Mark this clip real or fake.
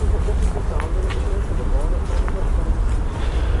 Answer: real